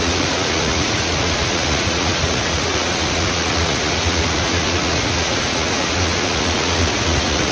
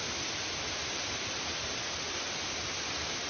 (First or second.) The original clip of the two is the second